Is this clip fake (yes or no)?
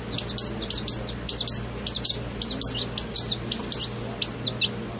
no